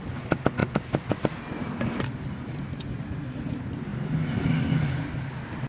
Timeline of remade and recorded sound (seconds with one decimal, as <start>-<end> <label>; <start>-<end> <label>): 0.0-5.7 recorded